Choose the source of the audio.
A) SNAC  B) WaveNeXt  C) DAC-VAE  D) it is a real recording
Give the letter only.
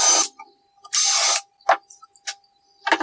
D